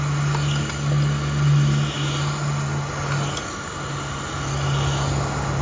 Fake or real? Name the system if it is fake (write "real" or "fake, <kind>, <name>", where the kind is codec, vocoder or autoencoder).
real